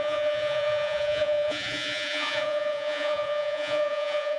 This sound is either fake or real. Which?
fake